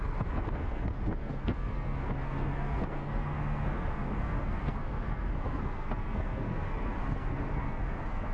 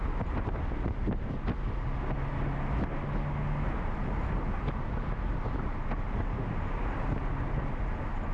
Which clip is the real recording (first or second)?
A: second